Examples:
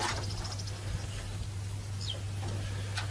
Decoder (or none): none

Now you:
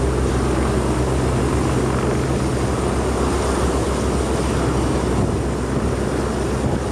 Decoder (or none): none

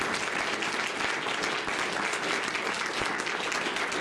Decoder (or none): none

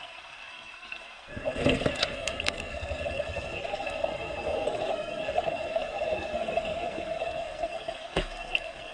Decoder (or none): codec, SNAC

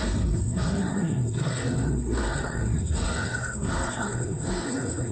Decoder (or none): codec, SNAC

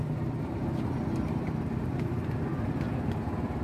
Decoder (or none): none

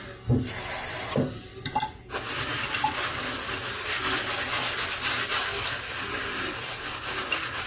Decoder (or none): none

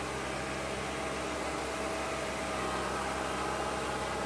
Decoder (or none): none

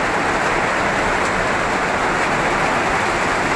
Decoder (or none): none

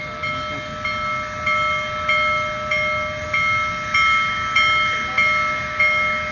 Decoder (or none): none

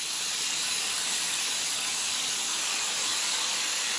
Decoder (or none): codec, DAC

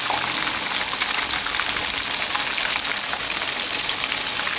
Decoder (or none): none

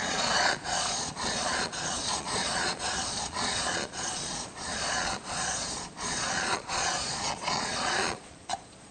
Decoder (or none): vocoder, Vocos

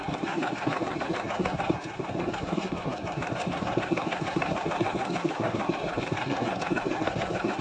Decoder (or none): codec, SNAC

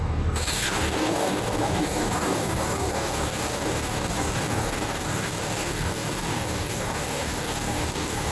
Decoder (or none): codec, DAC